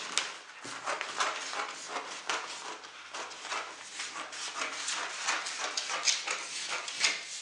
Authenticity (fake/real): real